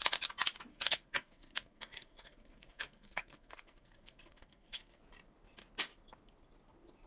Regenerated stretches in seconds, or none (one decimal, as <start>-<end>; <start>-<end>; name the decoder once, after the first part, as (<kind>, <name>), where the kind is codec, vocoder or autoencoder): 0.7-5.0 (codec, SNAC)